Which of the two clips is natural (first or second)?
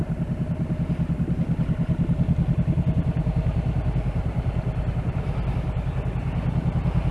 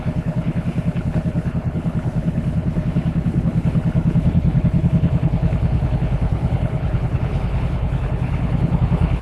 first